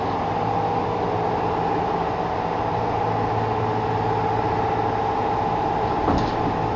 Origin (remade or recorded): recorded